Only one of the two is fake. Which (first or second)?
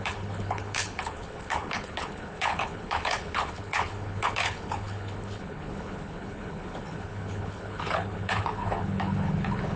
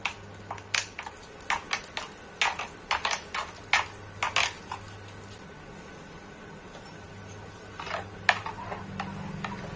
first